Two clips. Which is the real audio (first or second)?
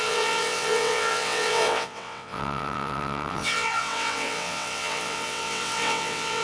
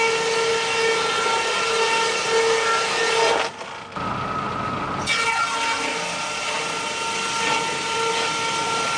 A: second